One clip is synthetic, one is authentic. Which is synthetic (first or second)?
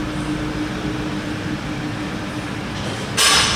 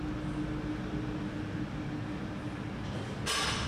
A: first